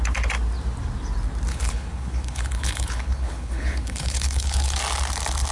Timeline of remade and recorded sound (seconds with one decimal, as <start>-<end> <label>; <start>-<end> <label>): 0.0-1.5 recorded; 1.5-4.8 remade; 4.8-5.5 recorded